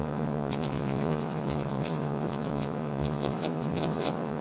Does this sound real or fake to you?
fake